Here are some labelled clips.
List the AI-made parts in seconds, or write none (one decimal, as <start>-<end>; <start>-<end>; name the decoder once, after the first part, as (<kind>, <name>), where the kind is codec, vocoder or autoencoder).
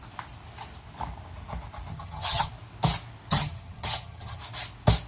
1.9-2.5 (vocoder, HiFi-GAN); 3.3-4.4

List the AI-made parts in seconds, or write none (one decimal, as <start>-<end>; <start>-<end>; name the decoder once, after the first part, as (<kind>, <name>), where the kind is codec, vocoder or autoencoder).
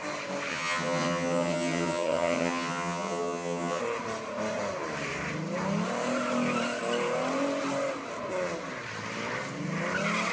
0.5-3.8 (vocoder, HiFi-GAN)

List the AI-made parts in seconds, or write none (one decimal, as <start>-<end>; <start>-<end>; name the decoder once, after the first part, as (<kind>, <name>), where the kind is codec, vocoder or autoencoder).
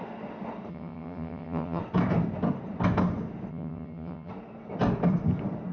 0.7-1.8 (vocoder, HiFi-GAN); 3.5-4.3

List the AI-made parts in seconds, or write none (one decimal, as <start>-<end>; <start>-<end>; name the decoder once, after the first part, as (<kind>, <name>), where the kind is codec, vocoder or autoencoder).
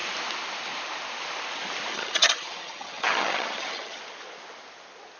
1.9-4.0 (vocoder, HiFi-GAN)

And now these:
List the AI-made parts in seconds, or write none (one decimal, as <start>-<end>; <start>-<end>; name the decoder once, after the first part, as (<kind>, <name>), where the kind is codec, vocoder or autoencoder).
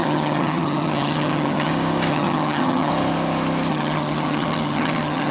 0.0-1.7 (vocoder, HiFi-GAN); 2.1-2.9; 3.7-5.3